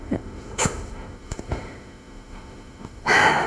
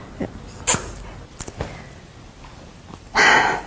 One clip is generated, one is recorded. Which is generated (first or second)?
first